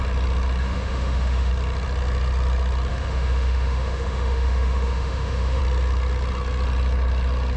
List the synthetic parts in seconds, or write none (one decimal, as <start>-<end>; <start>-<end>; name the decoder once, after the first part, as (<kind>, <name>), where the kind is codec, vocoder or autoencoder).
0.6-1.5 (autoencoder, DAC-VAE); 2.9-5.6

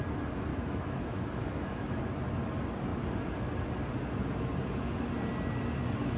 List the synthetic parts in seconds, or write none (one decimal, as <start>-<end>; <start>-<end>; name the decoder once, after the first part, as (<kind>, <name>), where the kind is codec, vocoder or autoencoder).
0.5-2.0 (autoencoder, DAC-VAE)

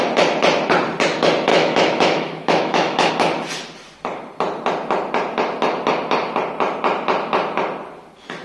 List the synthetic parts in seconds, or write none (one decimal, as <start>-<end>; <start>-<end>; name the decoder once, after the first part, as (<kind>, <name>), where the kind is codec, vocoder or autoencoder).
1.5-3.1 (autoencoder, DAC-VAE)